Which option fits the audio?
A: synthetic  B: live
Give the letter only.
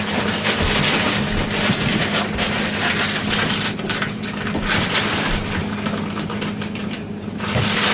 B